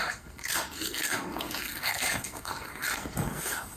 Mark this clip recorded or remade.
remade